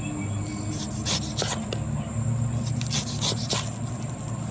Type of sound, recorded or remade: recorded